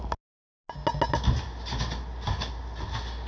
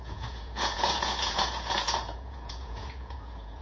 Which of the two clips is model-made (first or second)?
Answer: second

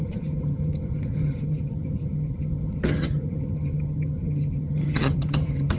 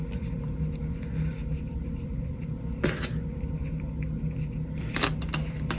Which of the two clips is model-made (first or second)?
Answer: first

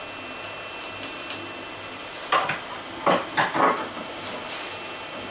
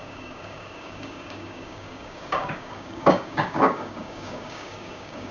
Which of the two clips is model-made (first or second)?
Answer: second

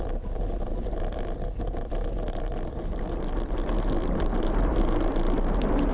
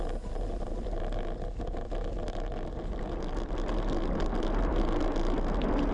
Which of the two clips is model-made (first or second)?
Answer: first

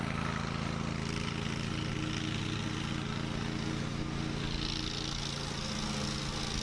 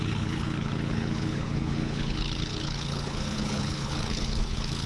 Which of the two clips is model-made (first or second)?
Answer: second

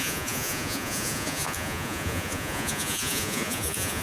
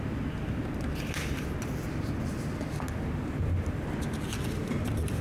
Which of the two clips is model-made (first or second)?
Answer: first